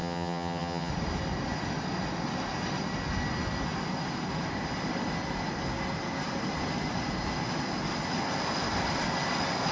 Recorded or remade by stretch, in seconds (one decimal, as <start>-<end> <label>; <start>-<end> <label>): 0.0-0.9 remade; 0.9-9.7 recorded

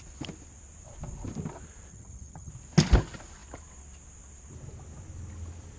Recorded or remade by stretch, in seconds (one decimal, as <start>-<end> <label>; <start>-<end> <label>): 0.0-1.9 recorded; 1.9-2.5 remade; 2.5-5.8 recorded

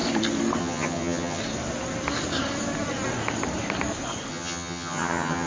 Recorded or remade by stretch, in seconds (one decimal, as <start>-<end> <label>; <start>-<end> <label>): 0.0-0.6 recorded; 0.6-1.4 remade; 1.4-4.3 recorded; 4.3-5.5 remade

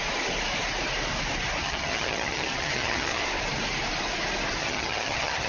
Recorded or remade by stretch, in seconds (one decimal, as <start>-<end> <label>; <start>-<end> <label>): 0.0-1.6 recorded; 1.6-3.2 remade; 3.2-4.6 recorded; 4.6-5.5 remade

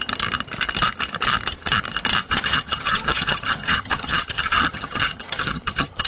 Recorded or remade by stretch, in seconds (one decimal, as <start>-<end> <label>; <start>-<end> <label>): 0.0-2.2 recorded; 2.2-6.1 remade

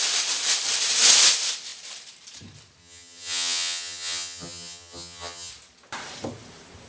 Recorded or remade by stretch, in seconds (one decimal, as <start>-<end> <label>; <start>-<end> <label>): 0.0-2.8 recorded; 2.8-5.5 remade; 5.5-6.9 recorded

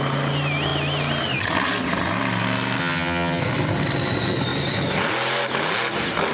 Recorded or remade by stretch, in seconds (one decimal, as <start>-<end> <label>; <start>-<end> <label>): 0.0-2.8 recorded; 2.8-3.4 remade; 3.4-6.3 recorded

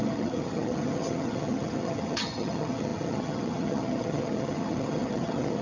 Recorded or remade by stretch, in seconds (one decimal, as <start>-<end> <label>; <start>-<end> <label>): 0.0-5.6 remade